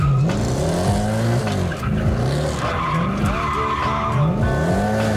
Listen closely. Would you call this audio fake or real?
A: real